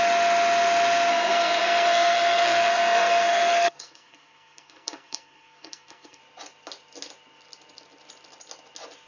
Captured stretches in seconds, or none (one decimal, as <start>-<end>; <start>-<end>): 0.0-1.1; 6.2-9.1